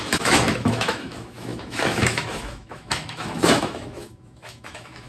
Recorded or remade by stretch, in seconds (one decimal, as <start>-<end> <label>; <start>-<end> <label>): 0.0-5.1 remade